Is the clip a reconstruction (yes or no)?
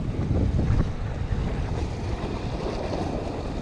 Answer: no